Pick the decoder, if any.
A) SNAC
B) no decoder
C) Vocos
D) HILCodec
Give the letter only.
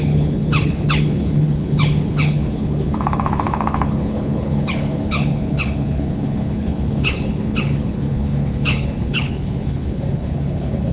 D